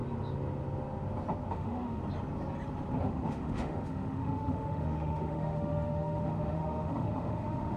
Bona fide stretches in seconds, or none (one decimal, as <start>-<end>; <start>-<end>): 0.0-1.5; 2.0-3.0